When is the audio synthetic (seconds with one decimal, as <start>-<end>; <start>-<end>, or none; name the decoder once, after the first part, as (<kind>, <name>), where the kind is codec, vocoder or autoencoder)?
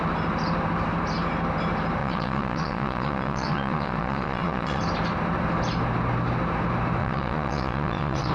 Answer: 2.0-4.8 (vocoder, Vocos); 7.0-8.3